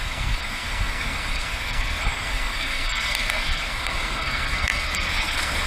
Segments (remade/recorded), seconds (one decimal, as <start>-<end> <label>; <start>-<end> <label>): 0.0-5.7 remade